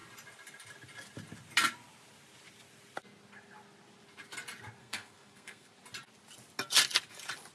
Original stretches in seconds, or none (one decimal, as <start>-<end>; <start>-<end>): 0.0-4.8; 5.7-7.5